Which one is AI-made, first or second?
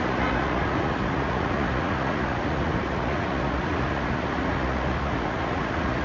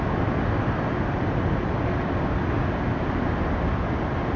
first